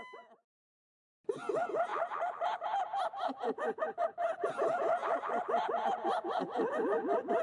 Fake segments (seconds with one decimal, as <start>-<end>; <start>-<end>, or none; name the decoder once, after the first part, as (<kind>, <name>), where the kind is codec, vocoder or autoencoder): none